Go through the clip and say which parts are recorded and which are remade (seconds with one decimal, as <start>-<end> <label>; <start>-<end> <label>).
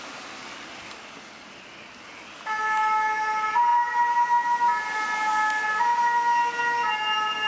0.0-7.5 recorded